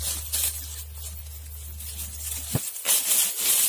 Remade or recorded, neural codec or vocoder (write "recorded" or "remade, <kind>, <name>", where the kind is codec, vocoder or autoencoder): recorded